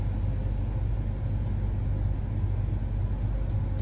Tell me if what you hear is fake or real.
real